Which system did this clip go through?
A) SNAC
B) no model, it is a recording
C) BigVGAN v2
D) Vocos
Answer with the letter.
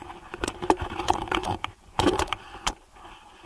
D